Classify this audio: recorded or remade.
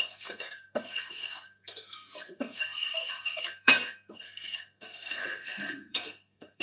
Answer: remade